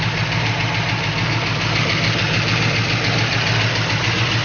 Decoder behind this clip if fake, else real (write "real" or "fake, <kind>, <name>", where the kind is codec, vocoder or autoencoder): real